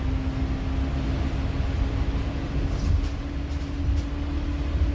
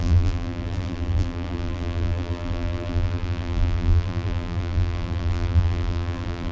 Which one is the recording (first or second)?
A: first